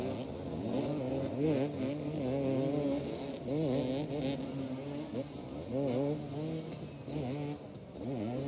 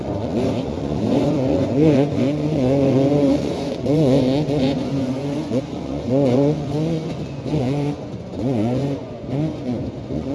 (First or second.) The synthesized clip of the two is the second